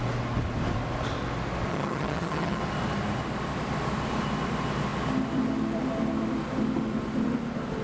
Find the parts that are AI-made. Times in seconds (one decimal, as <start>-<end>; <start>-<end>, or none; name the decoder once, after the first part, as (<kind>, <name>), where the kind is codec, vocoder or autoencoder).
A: 1.7-2.6 (vocoder, HiFi-GAN)